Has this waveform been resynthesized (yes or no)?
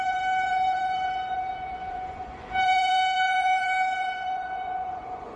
yes